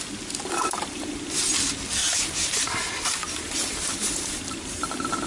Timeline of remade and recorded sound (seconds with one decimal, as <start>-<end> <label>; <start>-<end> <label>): 0.0-0.6 recorded; 0.6-1.2 remade; 1.2-2.0 recorded; 2.0-5.3 remade